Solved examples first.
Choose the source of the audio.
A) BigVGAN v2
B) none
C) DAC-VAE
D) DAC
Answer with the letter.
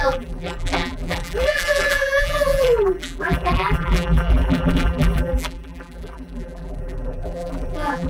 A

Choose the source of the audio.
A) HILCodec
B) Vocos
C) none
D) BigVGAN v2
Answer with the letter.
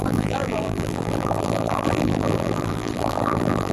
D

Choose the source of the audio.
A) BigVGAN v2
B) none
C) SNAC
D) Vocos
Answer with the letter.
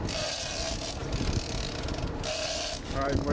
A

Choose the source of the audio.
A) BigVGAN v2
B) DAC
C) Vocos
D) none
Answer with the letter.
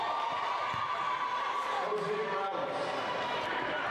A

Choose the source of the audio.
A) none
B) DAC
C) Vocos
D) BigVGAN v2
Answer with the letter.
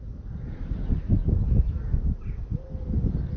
A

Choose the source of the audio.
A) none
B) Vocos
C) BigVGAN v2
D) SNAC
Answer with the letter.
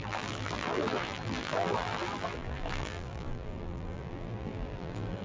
C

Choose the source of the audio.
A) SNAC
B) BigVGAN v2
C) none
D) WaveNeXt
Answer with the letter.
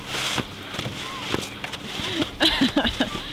C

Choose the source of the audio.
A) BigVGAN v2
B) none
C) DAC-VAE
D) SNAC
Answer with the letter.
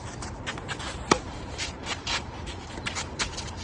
A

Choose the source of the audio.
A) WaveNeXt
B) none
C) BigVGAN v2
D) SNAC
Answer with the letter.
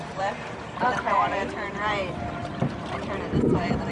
C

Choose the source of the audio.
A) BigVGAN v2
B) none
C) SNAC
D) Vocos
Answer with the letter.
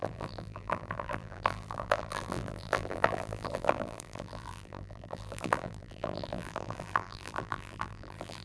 A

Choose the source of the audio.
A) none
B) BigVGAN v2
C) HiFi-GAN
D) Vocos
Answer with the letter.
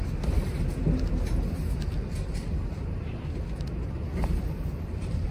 A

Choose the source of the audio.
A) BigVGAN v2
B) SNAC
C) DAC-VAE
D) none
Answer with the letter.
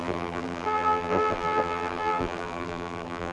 A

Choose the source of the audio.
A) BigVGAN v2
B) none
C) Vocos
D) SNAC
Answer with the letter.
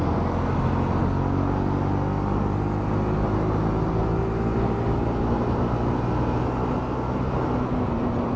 B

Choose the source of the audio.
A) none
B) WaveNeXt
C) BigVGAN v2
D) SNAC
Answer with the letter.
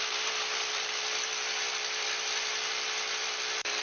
C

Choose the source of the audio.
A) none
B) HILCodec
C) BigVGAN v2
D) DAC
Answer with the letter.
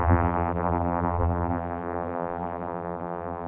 C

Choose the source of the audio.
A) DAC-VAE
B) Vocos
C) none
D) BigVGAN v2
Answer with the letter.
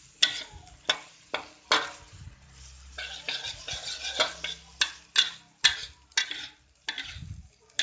C